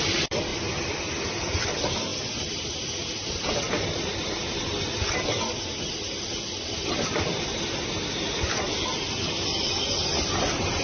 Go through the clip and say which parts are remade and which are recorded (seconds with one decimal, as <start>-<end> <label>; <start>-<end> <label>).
0.0-10.8 recorded